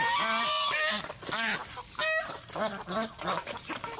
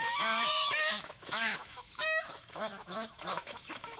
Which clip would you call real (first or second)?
first